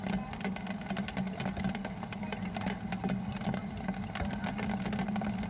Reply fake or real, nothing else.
real